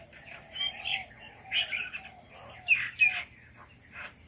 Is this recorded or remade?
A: recorded